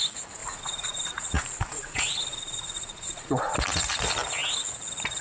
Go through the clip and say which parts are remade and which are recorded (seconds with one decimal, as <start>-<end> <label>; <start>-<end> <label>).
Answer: 0.0-0.4 recorded; 0.4-3.5 remade; 3.5-5.2 recorded